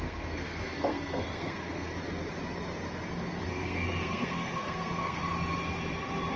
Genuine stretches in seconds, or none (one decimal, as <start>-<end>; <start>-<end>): 1.9-3.5; 5.2-6.4